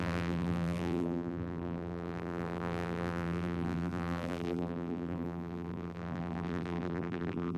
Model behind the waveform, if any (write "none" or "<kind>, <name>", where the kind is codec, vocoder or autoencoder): vocoder, BigVGAN v2